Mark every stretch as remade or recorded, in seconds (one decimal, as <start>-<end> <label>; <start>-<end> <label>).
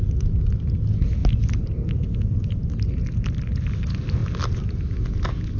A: 0.0-5.6 recorded